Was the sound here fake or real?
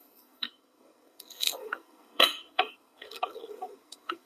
fake